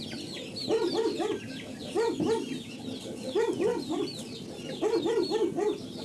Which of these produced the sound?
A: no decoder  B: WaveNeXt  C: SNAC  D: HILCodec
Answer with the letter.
A